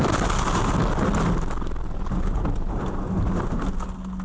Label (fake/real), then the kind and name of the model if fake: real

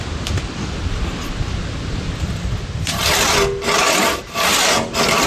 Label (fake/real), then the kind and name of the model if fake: real